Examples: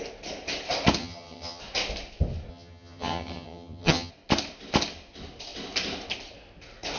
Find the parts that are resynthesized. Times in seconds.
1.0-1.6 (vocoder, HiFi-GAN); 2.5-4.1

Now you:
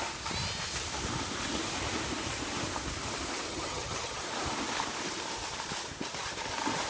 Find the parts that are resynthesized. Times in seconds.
3.5-4.2 (vocoder, HiFi-GAN)